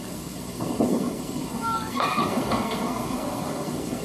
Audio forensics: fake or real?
fake